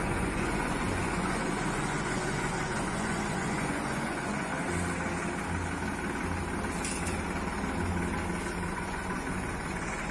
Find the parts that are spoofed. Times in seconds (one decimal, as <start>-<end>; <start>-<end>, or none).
0.0-4.5; 8.7-10.1